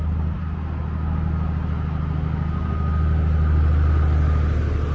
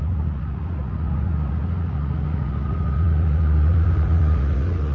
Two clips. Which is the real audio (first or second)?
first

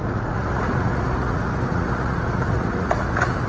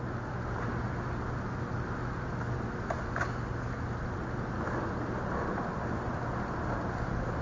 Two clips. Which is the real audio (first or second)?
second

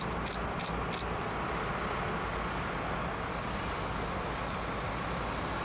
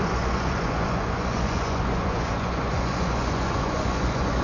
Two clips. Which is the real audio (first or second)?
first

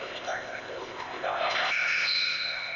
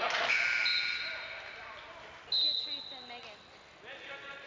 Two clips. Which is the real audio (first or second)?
second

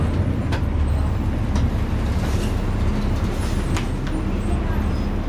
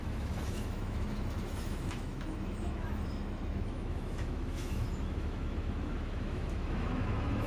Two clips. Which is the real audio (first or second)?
first